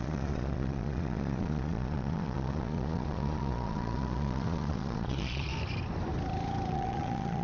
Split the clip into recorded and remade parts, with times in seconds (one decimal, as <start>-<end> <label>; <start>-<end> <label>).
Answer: 0.0-5.5 remade; 5.5-6.7 recorded; 6.7-7.4 remade